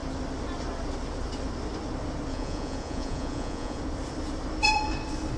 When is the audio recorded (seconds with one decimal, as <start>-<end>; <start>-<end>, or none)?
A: 0.0-2.3; 3.8-5.4